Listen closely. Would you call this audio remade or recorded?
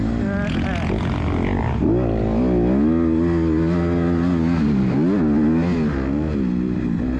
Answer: recorded